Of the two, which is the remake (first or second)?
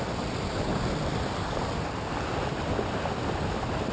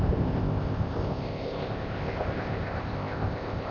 second